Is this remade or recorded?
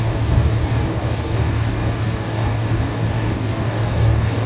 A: remade